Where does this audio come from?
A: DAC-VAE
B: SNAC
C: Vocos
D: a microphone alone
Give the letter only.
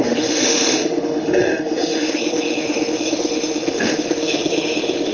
A